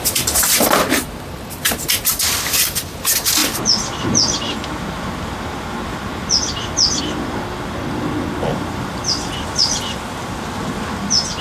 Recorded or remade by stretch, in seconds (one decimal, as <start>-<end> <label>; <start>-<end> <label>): 0.0-8.5 recorded; 8.5-9.8 remade; 9.8-11.4 recorded